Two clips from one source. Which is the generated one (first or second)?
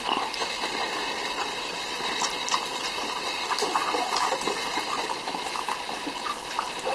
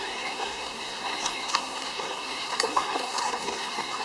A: second